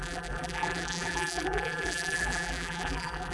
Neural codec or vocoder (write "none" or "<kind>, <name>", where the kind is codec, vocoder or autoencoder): vocoder, BigVGAN v2